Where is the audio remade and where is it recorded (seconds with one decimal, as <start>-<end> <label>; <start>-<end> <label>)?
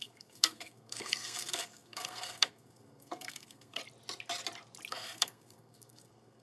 0.0-3.8 remade; 3.8-4.9 recorded; 4.9-6.4 remade